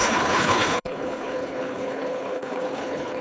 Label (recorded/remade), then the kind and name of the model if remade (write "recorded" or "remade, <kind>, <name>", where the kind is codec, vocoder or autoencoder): remade, codec, HILCodec